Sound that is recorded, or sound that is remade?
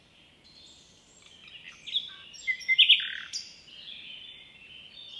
recorded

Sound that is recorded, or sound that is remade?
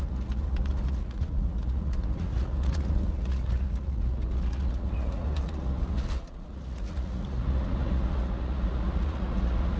remade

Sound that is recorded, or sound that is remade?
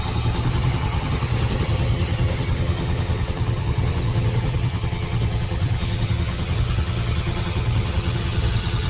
remade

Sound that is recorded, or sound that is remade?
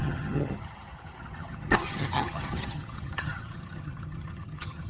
remade